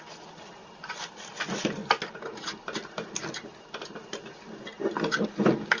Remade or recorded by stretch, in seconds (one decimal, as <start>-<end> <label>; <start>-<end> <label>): 0.0-5.8 recorded